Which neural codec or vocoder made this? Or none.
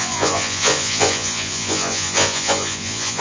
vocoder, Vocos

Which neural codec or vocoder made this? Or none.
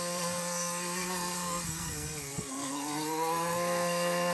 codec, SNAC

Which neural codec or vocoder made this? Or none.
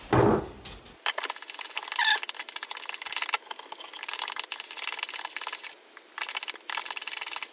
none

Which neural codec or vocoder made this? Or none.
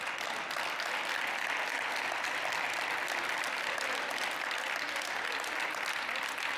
none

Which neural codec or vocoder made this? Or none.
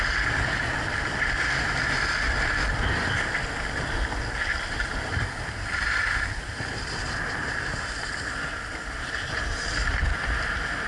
none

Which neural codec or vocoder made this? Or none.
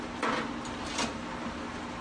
none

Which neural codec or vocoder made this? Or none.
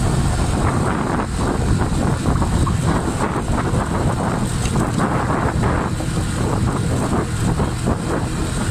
none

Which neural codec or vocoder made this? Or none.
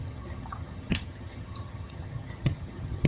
vocoder, HiFi-GAN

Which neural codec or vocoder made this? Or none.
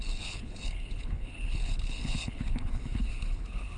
codec, HILCodec